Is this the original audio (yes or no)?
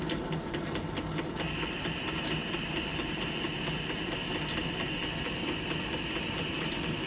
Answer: yes